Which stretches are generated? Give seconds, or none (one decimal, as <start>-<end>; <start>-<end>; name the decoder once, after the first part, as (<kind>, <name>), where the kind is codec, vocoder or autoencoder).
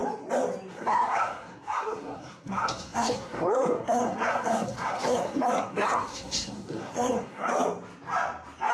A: 0.7-7.5 (codec, SNAC)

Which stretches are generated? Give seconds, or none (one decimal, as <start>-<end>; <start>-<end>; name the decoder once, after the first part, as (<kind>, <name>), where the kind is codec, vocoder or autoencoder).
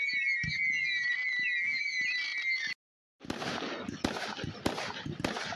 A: none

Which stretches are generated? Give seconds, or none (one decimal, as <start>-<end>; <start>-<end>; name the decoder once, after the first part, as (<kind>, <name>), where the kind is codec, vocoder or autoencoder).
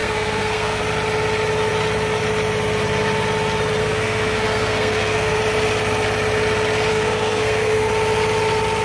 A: 0.0-0.8 (codec, SNAC); 3.8-5.4; 6.9-7.9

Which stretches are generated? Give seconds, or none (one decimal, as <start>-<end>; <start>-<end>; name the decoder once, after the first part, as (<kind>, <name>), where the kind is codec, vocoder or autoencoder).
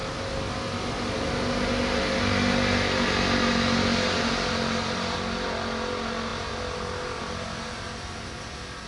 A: none